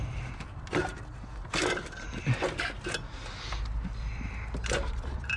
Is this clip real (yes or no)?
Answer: yes